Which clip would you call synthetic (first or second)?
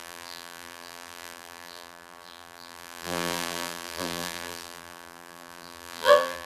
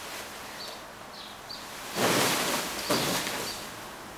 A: first